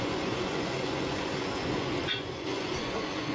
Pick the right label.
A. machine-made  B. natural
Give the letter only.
A